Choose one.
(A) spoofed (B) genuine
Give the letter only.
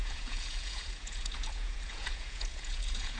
A